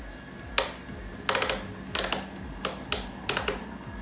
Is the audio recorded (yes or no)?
yes